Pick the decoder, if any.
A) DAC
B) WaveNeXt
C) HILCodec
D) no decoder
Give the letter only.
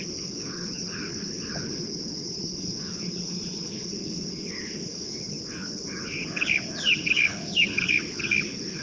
C